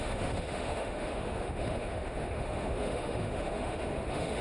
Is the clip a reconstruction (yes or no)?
yes